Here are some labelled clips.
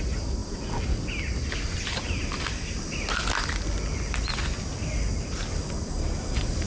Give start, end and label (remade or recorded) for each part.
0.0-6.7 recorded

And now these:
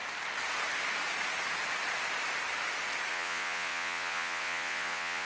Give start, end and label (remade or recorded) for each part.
0.0-3.1 recorded; 3.1-5.2 remade

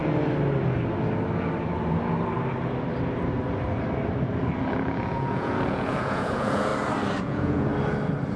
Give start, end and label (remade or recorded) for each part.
0.0-4.7 recorded; 4.7-6.7 remade; 6.7-7.2 recorded; 7.2-7.7 remade; 7.7-8.4 recorded